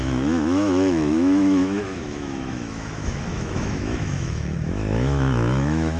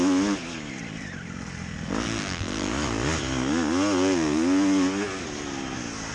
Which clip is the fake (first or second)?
first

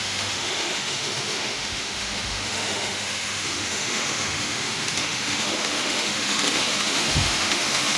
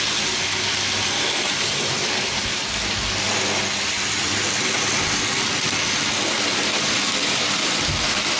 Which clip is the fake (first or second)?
first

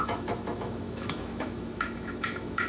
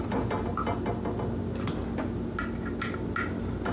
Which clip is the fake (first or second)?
first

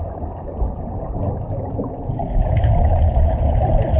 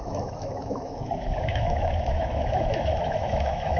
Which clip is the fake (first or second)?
second